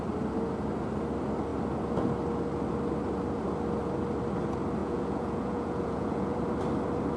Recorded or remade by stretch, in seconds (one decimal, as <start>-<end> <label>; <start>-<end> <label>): 0.0-4.8 recorded; 4.8-6.4 remade; 6.4-7.2 recorded